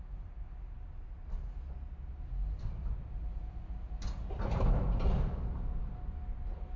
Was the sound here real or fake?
real